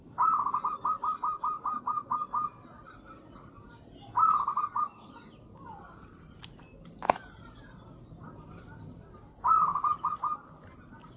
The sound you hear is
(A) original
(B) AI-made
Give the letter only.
A